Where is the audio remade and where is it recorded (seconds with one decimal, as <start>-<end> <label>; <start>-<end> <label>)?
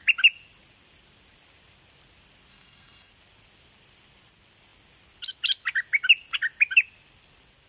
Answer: 0.0-2.5 recorded; 2.5-3.1 remade; 3.1-7.7 recorded